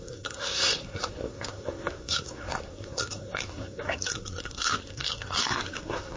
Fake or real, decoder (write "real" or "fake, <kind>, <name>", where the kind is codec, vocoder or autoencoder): fake, codec, SNAC